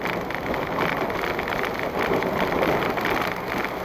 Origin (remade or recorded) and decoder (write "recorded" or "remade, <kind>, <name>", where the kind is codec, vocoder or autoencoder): recorded